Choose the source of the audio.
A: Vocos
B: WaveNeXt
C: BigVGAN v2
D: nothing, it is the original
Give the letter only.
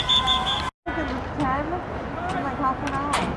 D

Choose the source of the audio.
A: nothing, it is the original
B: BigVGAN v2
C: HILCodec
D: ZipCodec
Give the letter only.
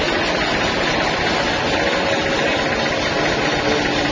A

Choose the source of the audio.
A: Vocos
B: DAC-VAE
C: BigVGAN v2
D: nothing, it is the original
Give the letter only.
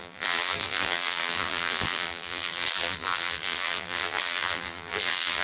C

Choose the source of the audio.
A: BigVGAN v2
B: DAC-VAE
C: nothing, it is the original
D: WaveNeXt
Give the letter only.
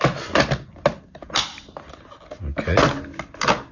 C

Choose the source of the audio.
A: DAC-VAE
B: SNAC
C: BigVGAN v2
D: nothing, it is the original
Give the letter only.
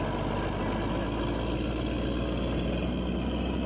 D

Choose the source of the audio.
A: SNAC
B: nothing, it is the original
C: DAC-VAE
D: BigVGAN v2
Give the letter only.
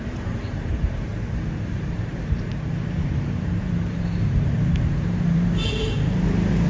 D